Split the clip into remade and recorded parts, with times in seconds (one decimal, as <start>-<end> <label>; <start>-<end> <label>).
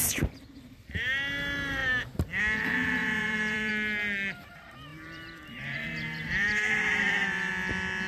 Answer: 0.0-3.0 recorded; 3.0-3.7 remade; 3.7-4.9 recorded; 4.9-7.5 remade; 7.5-8.1 recorded